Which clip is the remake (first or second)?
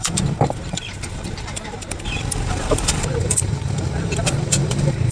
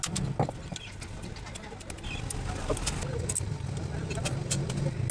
first